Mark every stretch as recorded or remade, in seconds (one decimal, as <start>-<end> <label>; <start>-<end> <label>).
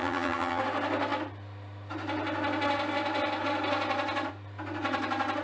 0.0-0.6 remade; 0.6-5.4 recorded